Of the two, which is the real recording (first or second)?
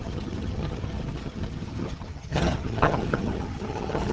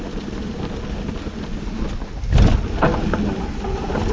second